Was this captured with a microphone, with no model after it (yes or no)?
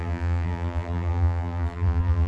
no